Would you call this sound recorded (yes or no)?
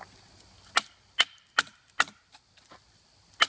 yes